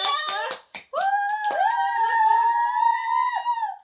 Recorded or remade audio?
remade